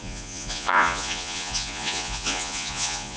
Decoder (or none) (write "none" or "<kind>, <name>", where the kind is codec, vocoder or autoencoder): vocoder, Vocos